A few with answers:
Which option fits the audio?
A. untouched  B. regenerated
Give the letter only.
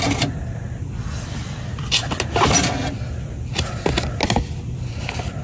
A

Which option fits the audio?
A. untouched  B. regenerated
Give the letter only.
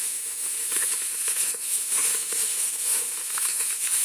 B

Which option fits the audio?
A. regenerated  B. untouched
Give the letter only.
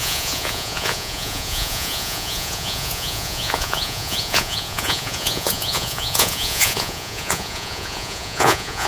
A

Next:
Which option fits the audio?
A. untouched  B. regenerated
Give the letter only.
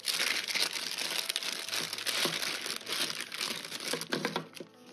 A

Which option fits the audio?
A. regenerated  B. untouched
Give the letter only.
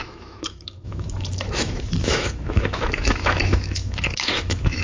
A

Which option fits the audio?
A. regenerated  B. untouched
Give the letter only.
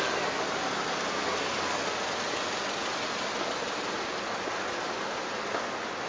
B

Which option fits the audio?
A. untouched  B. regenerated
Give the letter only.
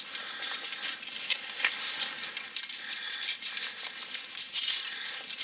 A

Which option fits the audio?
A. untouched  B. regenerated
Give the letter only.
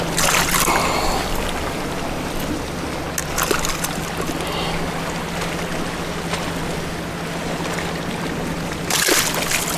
A